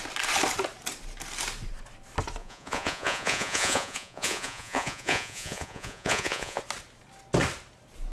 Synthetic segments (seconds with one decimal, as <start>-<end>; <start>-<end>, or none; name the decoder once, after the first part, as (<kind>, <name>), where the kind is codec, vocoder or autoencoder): 2.4-6.6 (vocoder, Vocos)